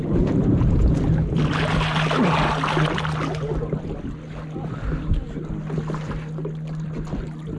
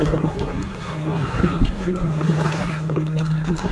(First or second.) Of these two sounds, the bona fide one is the first